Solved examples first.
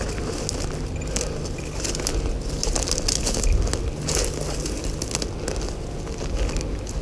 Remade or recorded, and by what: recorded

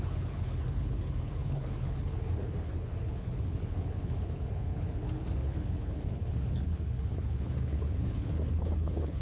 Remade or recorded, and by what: remade, codec, HILCodec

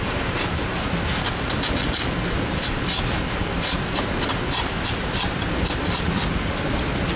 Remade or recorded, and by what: recorded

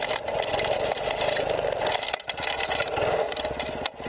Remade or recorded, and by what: recorded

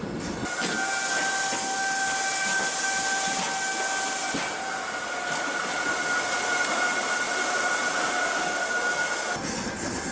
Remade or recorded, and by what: recorded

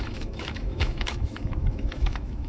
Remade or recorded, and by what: remade, autoencoder, DAC-VAE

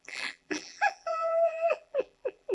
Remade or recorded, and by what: remade, vocoder, BigVGAN v2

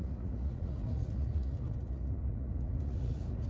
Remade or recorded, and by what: remade, vocoder, Vocos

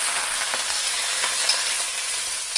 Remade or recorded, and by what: recorded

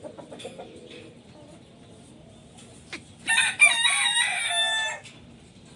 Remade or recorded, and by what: recorded